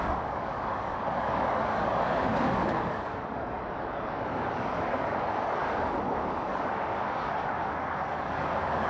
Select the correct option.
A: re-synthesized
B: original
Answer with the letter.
A